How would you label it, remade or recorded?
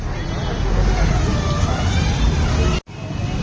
recorded